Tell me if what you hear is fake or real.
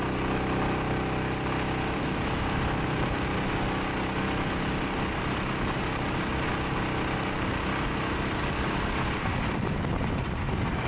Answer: real